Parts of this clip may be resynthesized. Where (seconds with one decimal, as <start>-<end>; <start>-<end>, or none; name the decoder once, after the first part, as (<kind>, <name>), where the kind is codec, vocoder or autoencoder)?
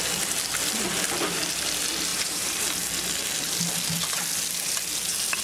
2.1-2.6 (vocoder, BigVGAN v2)